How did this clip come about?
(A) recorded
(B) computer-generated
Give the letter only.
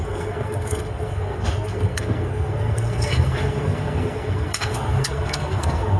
B